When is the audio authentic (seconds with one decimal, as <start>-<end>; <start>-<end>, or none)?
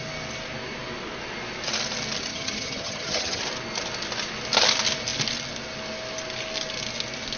0.0-2.3; 3.4-7.4